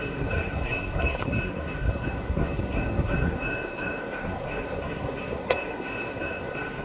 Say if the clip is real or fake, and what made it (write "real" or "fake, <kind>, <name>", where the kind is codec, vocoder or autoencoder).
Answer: fake, codec, SNAC